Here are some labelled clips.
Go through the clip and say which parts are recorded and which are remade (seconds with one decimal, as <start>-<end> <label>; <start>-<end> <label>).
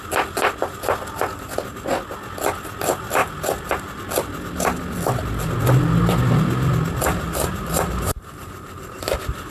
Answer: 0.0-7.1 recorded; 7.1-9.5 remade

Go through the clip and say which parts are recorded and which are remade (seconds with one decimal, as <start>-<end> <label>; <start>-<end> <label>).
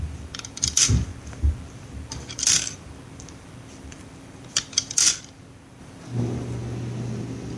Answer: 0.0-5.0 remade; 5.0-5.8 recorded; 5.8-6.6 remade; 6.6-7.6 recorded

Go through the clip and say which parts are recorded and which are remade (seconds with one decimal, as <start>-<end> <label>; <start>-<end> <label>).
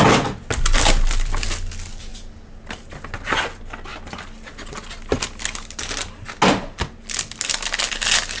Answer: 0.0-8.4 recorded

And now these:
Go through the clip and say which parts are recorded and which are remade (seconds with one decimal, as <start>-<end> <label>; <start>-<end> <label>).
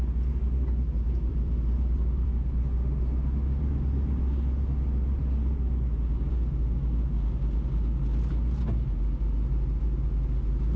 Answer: 0.0-1.3 recorded; 1.3-2.6 remade; 2.6-10.8 recorded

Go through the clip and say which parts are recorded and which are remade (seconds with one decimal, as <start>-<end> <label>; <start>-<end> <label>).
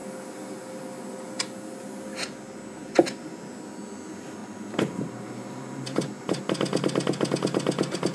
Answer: 0.0-4.4 recorded; 4.4-6.4 remade; 6.4-8.1 recorded